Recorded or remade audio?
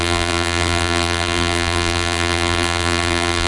remade